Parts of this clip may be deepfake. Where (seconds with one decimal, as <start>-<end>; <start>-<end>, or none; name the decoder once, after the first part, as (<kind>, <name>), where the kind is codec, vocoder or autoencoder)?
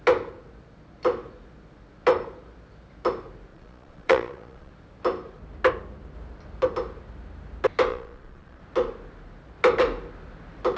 3.5-4.7 (vocoder, Vocos); 7.9-8.6